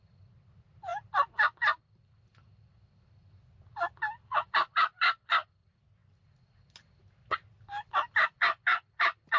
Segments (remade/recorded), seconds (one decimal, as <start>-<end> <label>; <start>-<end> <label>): 0.0-9.4 recorded